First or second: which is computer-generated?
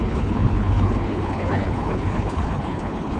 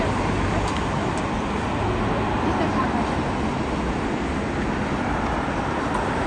first